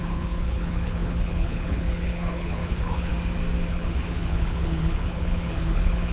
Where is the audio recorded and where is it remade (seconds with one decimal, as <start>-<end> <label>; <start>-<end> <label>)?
0.0-3.1 remade; 3.1-3.7 recorded; 3.7-6.1 remade